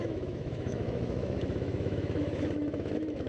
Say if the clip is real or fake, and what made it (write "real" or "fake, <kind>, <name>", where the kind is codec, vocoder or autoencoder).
fake, autoencoder, DAC-VAE